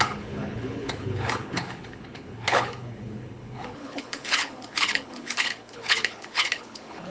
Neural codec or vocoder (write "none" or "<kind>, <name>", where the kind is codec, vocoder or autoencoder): codec, HILCodec